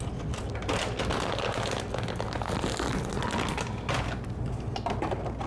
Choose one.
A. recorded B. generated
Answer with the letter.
A